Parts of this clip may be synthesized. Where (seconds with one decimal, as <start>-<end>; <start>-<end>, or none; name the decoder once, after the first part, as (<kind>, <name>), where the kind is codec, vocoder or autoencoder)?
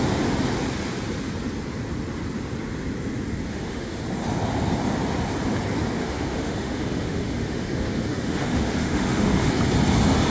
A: 3.5-4.0 (autoencoder, DAC-VAE); 6.0-9.5